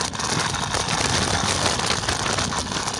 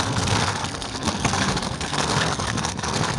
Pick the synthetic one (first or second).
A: second